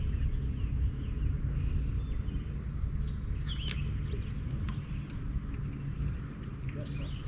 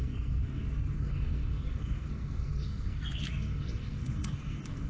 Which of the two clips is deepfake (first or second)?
second